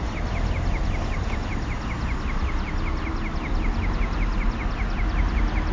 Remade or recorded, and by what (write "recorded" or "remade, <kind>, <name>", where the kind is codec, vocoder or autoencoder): recorded